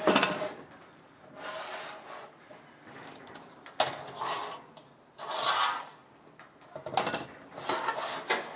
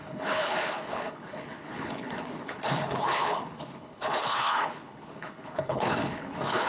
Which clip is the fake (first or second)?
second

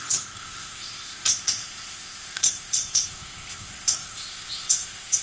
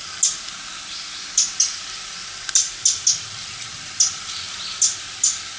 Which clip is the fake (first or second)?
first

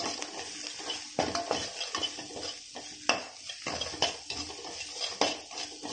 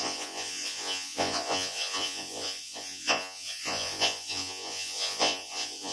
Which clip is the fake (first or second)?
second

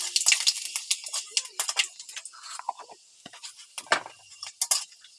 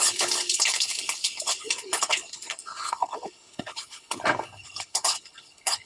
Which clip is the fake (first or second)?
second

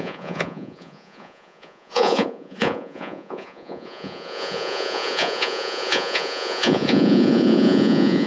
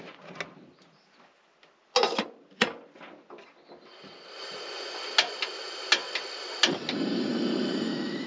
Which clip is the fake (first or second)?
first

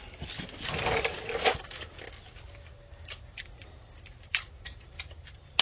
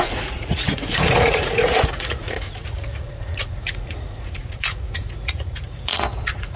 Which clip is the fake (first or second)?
second